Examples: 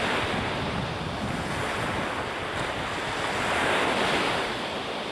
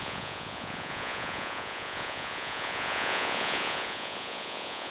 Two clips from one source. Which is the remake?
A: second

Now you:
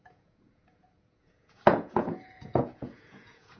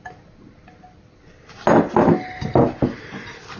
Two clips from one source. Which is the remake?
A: first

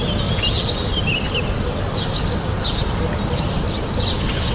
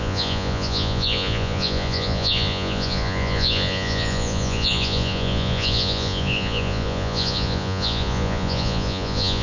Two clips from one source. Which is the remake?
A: second